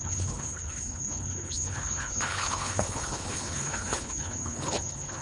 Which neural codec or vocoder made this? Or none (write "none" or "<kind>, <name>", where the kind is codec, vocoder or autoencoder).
codec, HILCodec